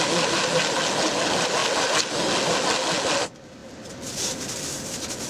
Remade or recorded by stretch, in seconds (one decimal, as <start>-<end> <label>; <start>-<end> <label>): 0.0-5.3 recorded